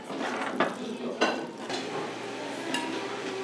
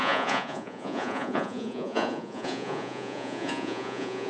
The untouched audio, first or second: first